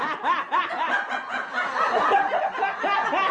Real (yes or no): yes